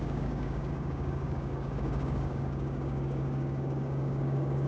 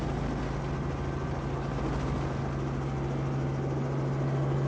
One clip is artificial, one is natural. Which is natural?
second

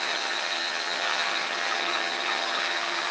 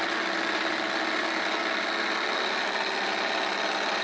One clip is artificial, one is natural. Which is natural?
second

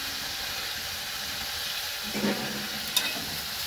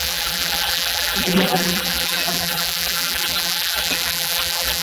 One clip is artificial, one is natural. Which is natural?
first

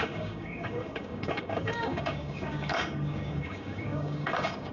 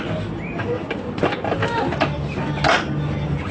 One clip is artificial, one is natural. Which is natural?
second